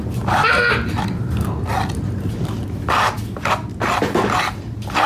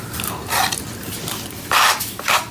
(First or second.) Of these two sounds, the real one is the first